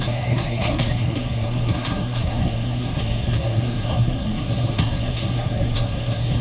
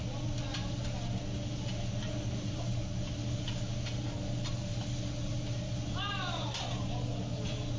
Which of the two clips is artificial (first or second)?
first